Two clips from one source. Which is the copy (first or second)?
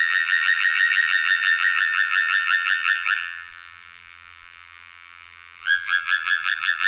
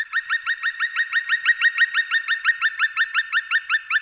first